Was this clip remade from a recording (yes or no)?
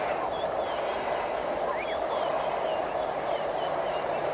no